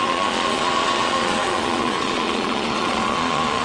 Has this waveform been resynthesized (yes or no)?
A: yes